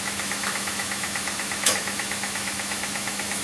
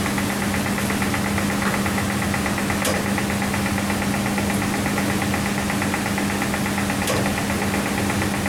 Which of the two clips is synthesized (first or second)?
first